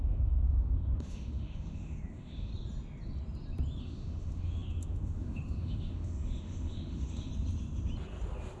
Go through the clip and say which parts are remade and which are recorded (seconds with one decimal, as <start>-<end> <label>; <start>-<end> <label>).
0.0-2.5 remade; 2.5-3.8 recorded; 3.8-7.3 remade; 7.3-8.6 recorded